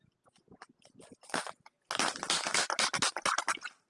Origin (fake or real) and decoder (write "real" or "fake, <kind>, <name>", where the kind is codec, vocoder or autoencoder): real